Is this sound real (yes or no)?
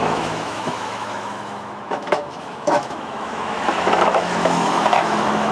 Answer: no